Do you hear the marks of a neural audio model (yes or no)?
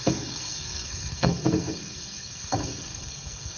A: yes